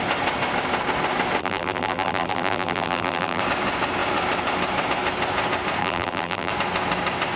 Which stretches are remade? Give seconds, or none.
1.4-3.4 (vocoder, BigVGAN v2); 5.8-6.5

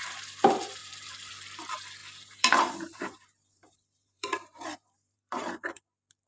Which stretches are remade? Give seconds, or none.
0.8-1.3 (vocoder, BigVGAN v2); 2.0-5.8

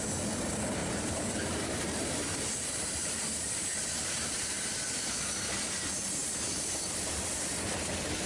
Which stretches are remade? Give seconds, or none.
0.8-5.1 (vocoder, BigVGAN v2)

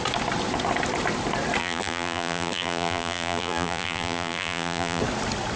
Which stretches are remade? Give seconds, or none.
1.6-5.0 (vocoder, BigVGAN v2)

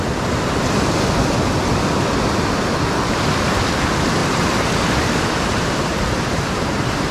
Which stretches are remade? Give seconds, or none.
4.2-7.1 (vocoder, BigVGAN v2)

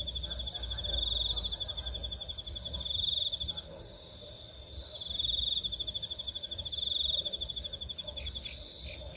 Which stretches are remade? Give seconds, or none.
none

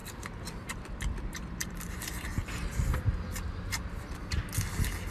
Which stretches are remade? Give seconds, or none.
0.0-1.9 (vocoder, BigVGAN v2)

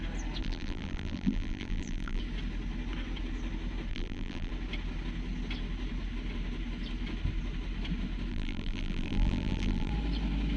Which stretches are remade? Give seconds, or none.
0.4-2.2 (vocoder, BigVGAN v2); 3.9-4.5; 8.3-9.9